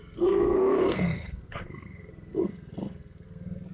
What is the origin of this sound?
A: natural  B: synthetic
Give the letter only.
B